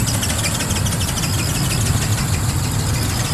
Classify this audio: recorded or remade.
recorded